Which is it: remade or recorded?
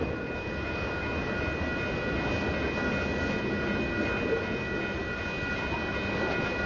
recorded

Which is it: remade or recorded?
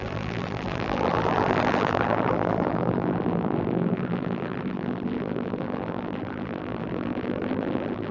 remade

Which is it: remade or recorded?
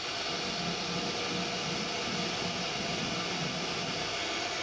recorded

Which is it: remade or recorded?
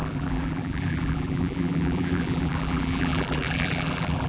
remade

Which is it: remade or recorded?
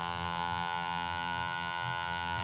remade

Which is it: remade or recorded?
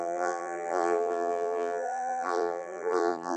remade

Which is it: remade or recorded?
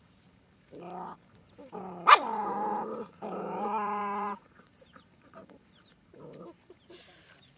remade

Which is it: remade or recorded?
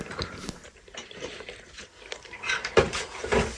remade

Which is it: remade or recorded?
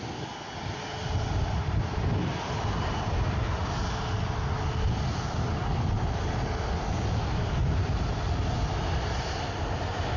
recorded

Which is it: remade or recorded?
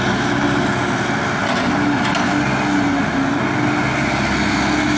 recorded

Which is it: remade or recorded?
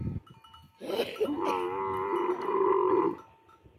recorded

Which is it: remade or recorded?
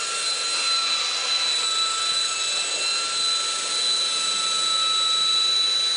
recorded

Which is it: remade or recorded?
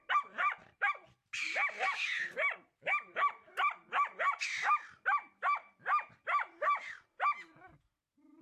recorded